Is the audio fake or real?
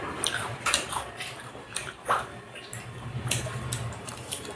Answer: fake